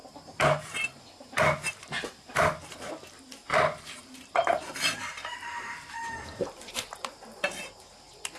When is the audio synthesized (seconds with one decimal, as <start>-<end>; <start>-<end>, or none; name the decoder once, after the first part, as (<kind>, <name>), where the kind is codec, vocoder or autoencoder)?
0.0-2.9 (vocoder, BigVGAN v2); 3.5-7.7